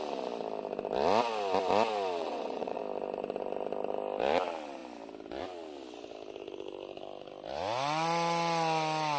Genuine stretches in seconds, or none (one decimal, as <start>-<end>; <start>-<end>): 0.0-2.2; 2.8-9.2